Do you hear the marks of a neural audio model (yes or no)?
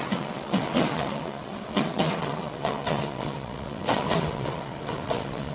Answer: yes